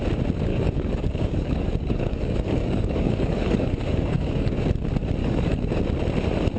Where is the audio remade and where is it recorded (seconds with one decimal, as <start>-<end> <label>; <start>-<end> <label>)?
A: 0.0-0.5 recorded; 0.5-4.5 remade; 4.5-5.2 recorded; 5.2-5.8 remade; 5.8-6.6 recorded